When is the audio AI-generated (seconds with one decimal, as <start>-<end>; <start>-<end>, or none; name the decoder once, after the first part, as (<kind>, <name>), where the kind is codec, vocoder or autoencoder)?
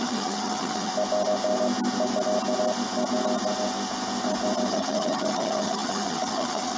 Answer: 0.0-0.9 (vocoder, HiFi-GAN); 4.7-6.8